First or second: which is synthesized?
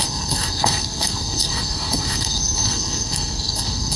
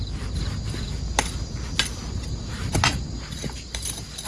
first